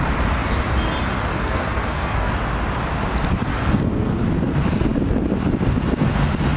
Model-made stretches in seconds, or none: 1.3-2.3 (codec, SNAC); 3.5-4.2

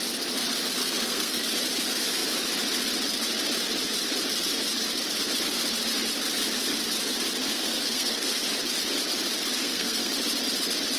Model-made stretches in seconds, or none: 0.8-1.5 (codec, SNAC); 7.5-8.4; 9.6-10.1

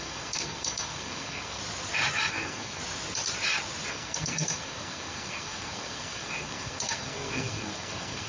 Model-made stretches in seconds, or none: 0.0-1.6 (codec, SNAC); 2.3-2.8; 3.9-8.3

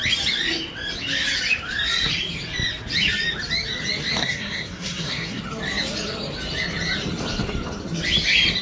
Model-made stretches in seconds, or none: 4.2-5.4 (codec, SNAC)